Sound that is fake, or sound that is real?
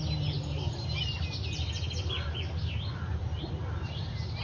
real